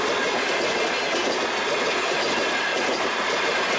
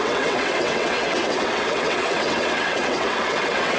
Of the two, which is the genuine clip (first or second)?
first